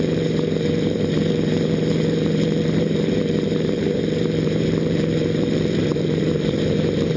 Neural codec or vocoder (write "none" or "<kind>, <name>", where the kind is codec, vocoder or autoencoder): vocoder, BigVGAN v2